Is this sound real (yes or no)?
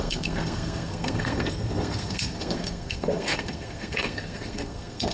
no